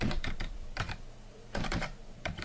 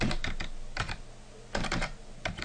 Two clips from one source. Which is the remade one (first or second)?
first